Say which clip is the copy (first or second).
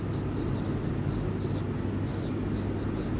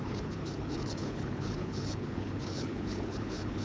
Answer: second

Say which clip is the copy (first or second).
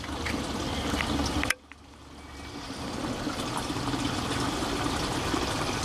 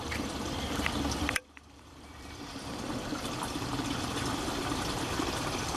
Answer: second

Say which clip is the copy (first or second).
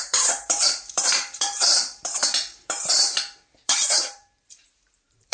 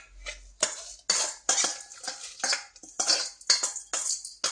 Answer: first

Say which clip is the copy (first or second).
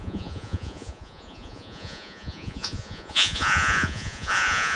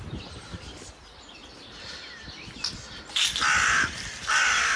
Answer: first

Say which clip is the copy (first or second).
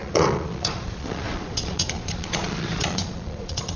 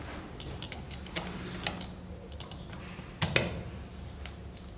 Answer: first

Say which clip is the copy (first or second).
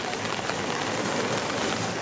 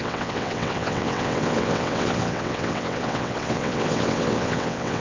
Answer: second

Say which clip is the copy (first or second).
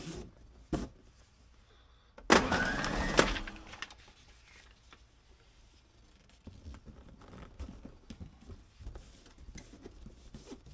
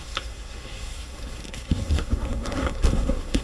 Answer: second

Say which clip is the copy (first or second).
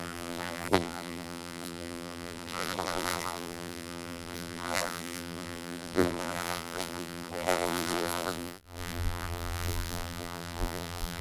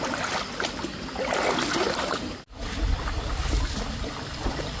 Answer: first